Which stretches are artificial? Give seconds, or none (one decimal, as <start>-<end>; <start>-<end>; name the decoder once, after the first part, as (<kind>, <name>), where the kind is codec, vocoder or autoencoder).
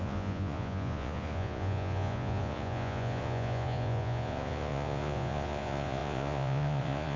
0.0-7.2 (vocoder, Vocos)